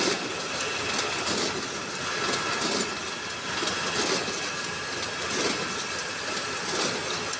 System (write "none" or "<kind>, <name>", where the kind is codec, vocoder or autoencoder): none